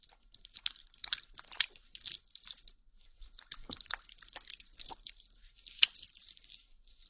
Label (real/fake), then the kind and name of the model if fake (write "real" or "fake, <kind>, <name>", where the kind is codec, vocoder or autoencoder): real